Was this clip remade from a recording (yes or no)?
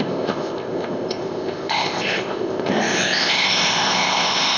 yes